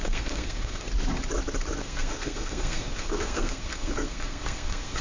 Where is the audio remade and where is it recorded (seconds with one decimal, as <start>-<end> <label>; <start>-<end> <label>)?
0.0-0.9 remade; 0.9-1.8 recorded; 1.8-5.0 remade